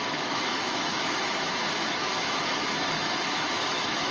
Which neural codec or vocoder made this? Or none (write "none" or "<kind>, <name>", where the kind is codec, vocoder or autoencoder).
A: autoencoder, DAC-VAE